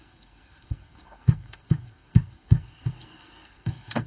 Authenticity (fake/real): fake